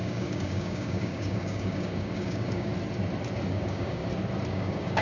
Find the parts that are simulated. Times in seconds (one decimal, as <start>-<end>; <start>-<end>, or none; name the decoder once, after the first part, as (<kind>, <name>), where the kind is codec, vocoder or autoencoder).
0.0-2.7 (codec, DAC); 3.5-4.0; 4.5-5.0